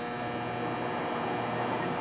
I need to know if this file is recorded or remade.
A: recorded